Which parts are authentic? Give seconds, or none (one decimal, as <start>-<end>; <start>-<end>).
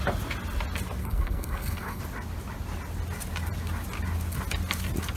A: 0.0-1.0; 2.0-5.2